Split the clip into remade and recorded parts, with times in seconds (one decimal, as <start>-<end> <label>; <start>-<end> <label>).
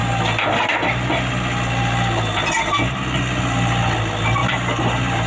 0.0-4.4 recorded; 4.4-5.3 remade